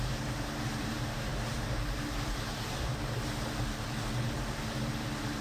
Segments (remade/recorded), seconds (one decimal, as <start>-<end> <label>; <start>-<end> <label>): 0.0-5.4 remade